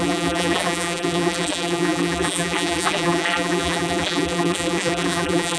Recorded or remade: remade